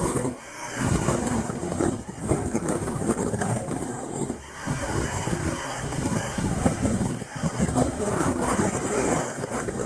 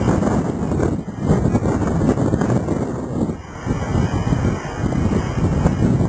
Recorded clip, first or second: second